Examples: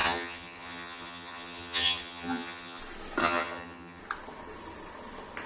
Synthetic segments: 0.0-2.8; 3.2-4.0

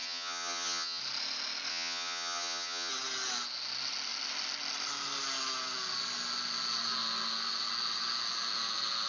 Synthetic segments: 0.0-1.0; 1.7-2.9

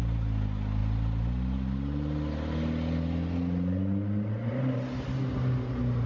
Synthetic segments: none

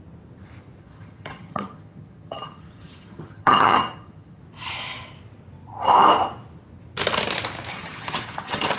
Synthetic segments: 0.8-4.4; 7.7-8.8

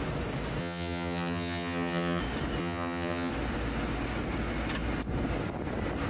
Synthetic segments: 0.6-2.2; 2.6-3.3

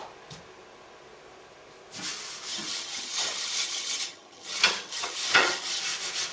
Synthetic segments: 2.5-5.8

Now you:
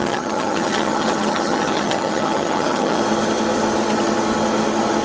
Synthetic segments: 0.0-3.0

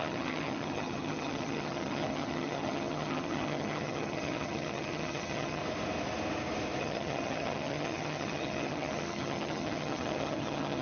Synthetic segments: 0.0-5.6; 6.8-10.8